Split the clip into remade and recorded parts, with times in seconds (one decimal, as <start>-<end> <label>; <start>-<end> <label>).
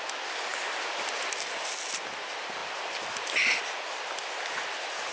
0.0-5.1 recorded